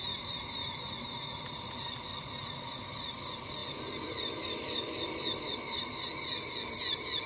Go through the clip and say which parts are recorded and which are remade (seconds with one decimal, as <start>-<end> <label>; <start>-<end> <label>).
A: 0.0-7.3 remade